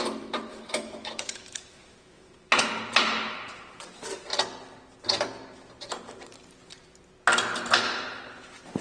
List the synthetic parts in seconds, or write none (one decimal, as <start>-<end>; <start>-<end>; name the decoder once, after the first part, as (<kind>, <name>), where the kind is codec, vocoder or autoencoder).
0.5-2.7 (autoencoder, DAC-VAE)